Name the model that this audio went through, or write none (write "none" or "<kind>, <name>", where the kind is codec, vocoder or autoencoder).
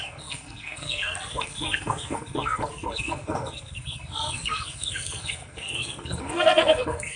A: codec, SNAC